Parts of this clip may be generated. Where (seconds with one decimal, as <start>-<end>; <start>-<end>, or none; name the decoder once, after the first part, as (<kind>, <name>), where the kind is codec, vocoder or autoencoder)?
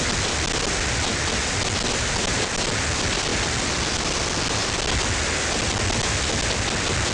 none